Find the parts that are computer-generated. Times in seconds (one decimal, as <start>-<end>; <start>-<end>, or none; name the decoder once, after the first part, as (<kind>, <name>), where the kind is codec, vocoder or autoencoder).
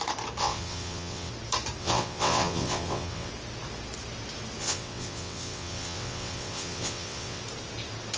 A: 0.4-1.3 (vocoder, WaveNeXt); 1.8-3.3; 4.6-7.4